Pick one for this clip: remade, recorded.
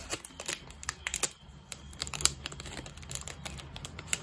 recorded